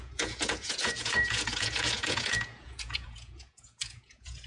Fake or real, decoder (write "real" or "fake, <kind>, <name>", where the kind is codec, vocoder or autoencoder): fake, vocoder, Vocos